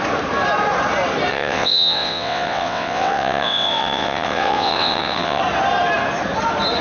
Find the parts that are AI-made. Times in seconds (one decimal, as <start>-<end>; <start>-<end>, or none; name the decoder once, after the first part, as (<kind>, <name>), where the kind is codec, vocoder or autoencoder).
1.3-5.4 (vocoder, WaveNeXt)